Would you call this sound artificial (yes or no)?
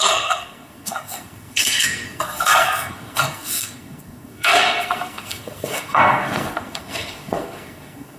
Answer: yes